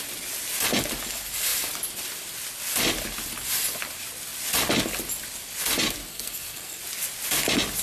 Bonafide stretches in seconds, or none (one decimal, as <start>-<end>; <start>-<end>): 0.0-6.1; 6.8-7.8